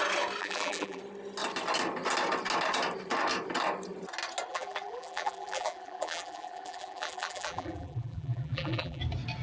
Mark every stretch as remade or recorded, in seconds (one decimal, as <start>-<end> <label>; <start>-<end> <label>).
0.0-0.4 recorded; 0.4-1.0 remade; 1.0-4.5 recorded; 4.5-9.0 remade; 9.0-9.4 recorded